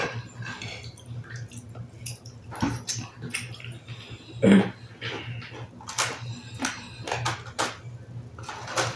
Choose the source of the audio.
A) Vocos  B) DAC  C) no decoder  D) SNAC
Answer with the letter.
C